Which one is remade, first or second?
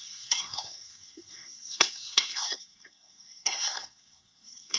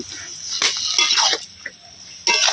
first